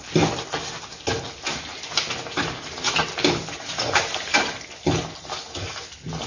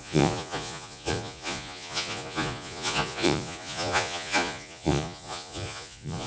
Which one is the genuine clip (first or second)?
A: first